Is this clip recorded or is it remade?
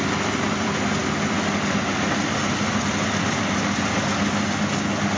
recorded